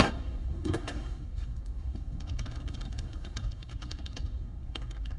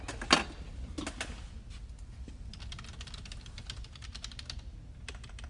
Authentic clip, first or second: second